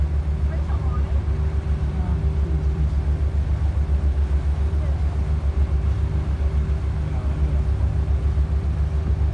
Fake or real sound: real